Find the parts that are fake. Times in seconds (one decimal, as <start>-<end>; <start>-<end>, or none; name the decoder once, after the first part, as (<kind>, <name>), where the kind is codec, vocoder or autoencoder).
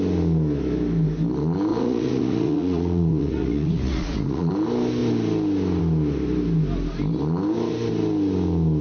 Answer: 1.7-4.5 (vocoder, Vocos)